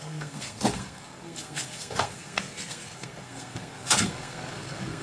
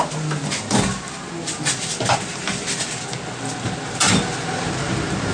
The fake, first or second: first